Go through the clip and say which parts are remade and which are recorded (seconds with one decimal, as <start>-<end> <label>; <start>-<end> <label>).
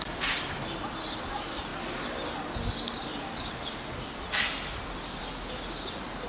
0.0-6.3 recorded